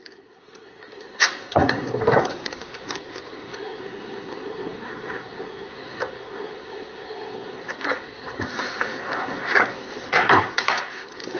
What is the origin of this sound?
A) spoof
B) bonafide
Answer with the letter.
A